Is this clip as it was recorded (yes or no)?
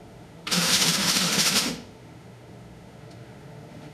no